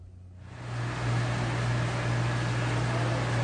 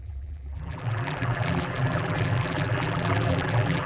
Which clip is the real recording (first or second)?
first